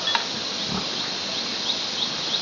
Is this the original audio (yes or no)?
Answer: yes